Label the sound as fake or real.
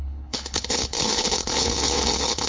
fake